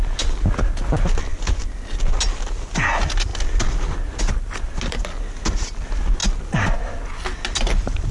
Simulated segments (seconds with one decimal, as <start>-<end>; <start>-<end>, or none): none